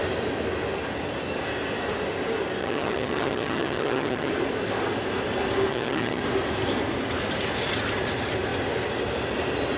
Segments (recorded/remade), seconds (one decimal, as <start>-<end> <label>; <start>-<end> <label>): 0.0-2.6 recorded; 2.6-4.3 remade; 4.3-5.7 recorded; 5.7-6.2 remade; 6.2-9.8 recorded